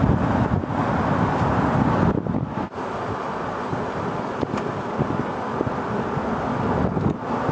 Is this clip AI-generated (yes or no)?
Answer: no